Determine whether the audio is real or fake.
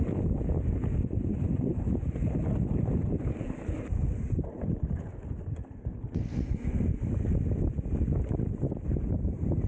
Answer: real